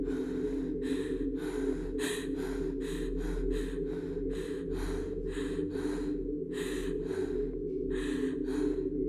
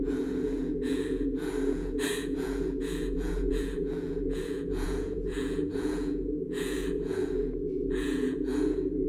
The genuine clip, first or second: first